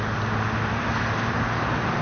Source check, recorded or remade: recorded